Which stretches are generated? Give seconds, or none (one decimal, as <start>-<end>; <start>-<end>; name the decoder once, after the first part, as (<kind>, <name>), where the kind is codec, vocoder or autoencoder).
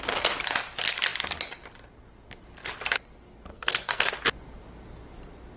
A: 3.5-4.1 (codec, SNAC)